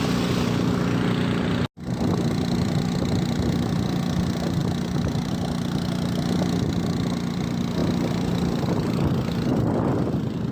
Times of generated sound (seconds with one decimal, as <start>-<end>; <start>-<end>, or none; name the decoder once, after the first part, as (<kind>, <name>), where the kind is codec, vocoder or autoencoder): none